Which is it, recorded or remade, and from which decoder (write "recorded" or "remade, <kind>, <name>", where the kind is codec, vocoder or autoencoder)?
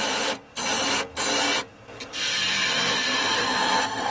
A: recorded